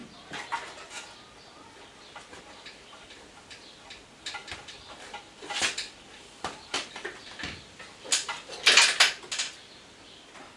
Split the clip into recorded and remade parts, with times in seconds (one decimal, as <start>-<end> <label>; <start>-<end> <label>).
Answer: 0.0-4.4 recorded; 4.4-9.1 remade; 9.1-10.6 recorded